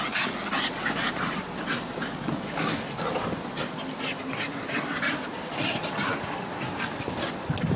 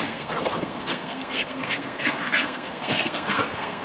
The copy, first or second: second